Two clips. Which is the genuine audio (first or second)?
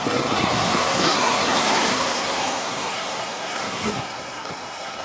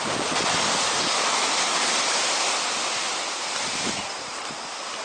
second